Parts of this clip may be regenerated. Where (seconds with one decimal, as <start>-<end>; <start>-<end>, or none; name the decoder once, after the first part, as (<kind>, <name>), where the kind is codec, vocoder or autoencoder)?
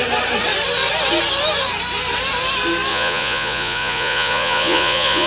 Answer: 2.9-5.3 (vocoder, Vocos)